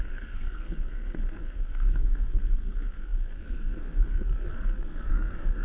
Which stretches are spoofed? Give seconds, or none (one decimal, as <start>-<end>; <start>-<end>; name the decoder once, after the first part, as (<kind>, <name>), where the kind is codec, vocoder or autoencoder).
0.0-5.6 (codec, SNAC)